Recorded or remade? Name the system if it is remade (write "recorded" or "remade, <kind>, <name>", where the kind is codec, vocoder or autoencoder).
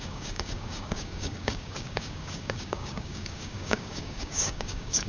remade, codec, DAC